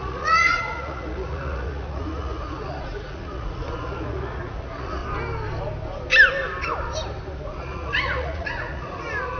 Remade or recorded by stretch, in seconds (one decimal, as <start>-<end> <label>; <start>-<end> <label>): 0.0-5.0 remade; 5.0-7.6 recorded; 7.6-9.4 remade